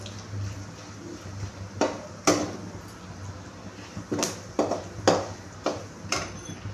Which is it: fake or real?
real